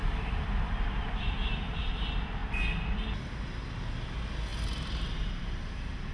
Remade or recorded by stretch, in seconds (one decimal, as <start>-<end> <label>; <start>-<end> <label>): 0.0-1.9 remade; 1.9-4.5 recorded; 4.5-6.1 remade